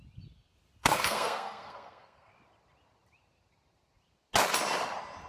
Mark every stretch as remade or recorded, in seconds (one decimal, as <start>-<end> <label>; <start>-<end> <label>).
0.0-0.8 recorded; 0.8-2.3 remade; 2.3-5.3 recorded